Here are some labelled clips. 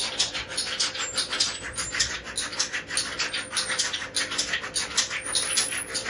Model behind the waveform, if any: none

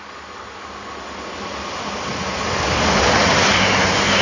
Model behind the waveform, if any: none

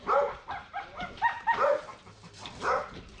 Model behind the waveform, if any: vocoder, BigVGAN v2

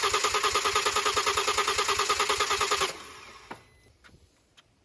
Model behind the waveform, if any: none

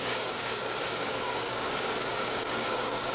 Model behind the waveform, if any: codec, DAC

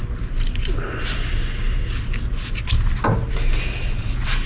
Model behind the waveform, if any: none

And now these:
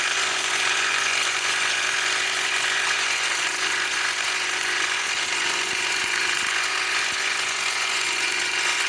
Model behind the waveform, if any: vocoder, Vocos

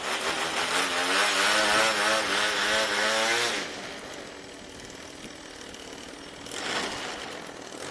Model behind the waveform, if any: none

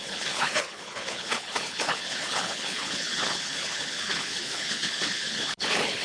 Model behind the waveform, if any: codec, HILCodec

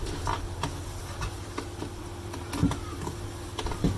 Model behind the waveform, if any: none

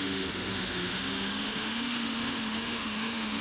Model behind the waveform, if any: autoencoder, DAC-VAE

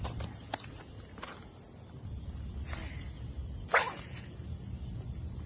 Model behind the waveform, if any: none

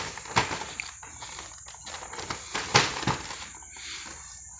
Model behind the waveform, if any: none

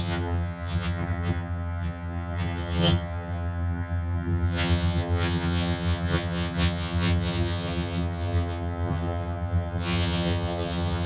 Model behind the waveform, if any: vocoder, HiFi-GAN